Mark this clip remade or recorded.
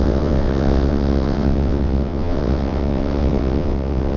remade